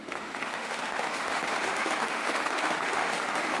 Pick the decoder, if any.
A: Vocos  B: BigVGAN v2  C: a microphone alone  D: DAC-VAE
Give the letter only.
D